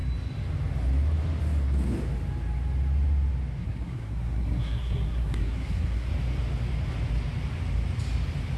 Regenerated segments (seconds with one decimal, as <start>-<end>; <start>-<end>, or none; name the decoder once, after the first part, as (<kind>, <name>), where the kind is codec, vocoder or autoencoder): 3.6-6.1 (codec, SNAC)